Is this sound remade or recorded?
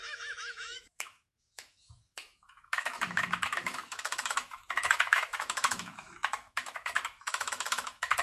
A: remade